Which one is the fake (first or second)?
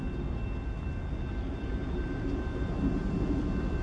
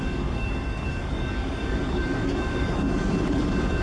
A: second